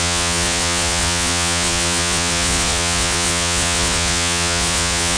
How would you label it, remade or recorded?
remade